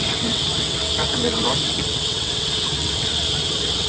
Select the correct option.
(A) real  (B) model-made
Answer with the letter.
B